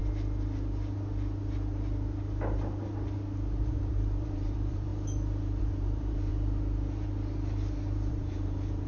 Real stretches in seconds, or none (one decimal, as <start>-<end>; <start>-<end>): 0.0-3.6; 4.9-5.6; 6.3-8.1